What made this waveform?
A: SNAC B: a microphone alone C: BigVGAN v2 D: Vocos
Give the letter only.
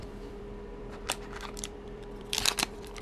C